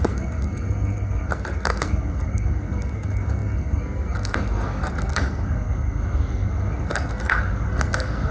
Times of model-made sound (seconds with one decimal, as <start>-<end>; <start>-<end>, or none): 0.0-8.3